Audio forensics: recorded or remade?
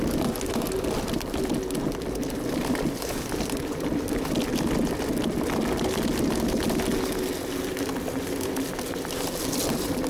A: recorded